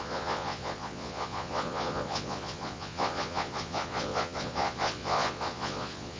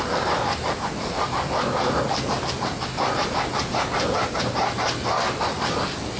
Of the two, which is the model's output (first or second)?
first